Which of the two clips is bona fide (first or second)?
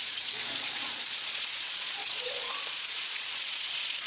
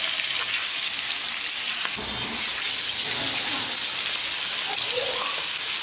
second